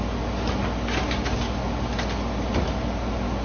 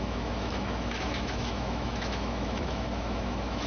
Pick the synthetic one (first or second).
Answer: second